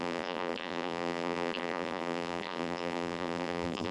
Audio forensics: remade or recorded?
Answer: remade